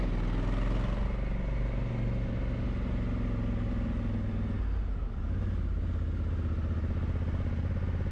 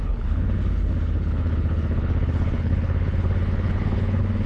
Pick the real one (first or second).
first